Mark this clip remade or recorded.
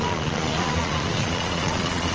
remade